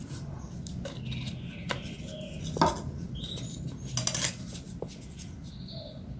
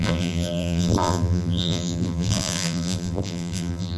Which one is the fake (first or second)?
second